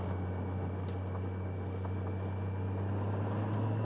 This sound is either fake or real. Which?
real